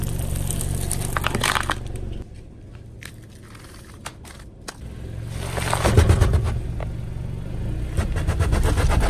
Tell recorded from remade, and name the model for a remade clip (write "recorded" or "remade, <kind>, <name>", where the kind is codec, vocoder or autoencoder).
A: recorded